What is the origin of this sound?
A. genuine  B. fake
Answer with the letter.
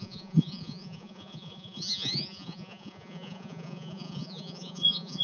B